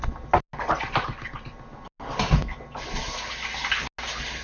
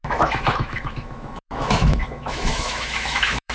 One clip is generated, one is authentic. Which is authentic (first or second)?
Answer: first